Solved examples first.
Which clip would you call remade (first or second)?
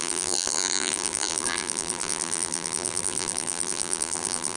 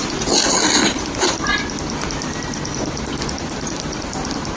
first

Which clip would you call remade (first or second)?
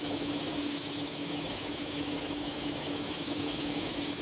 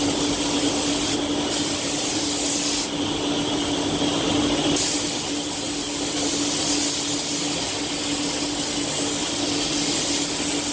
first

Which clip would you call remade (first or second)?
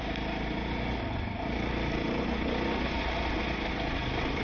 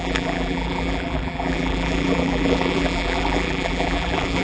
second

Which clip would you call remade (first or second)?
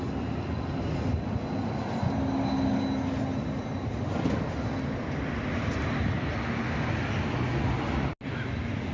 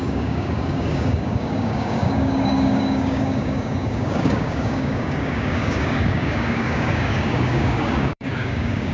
second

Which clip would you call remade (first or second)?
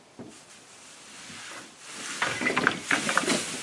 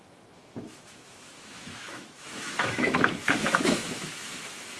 second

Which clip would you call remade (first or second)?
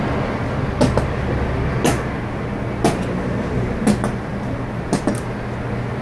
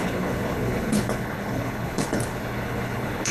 second